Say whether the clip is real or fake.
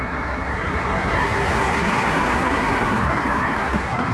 fake